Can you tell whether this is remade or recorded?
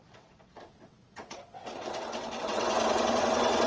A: remade